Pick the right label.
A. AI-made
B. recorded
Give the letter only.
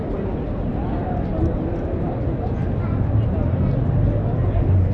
B